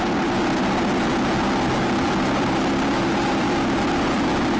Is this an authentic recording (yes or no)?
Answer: yes